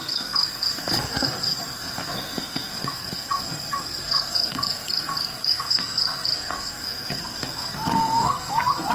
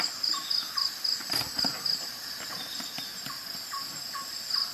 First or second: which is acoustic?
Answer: second